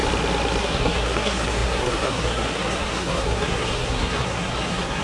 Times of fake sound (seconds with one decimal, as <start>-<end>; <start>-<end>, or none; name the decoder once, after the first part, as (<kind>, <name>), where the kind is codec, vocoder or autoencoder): 0.6-5.0 (codec, SNAC)